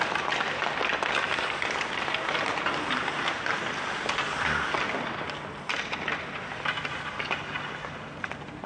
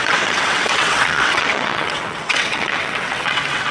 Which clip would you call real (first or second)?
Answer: first